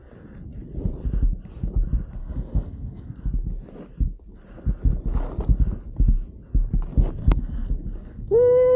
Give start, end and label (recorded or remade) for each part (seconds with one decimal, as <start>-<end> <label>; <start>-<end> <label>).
0.0-2.2 recorded; 2.2-3.3 remade; 3.3-7.2 recorded; 7.2-8.8 remade